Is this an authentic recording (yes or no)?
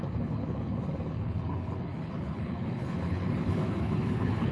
no